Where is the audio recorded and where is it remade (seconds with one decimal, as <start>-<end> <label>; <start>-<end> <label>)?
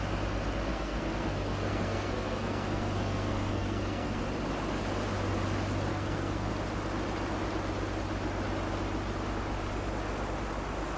0.0-0.7 recorded; 0.7-4.2 remade; 4.2-5.9 recorded; 5.9-6.5 remade; 6.5-11.0 recorded